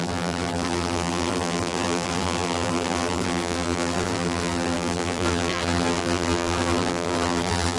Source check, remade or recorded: remade